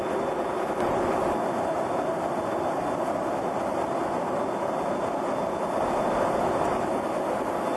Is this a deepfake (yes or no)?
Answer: no